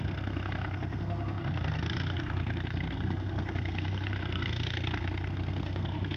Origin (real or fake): fake